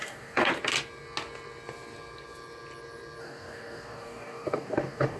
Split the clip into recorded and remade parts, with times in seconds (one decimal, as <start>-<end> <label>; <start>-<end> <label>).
0.0-0.5 remade; 0.5-3.2 recorded; 3.2-5.2 remade